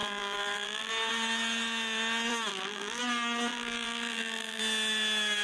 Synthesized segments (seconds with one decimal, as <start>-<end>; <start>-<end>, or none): 0.0-0.9; 2.5-3.0; 3.5-4.6